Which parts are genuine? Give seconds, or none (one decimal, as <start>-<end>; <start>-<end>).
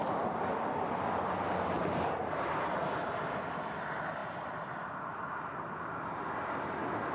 0.0-7.1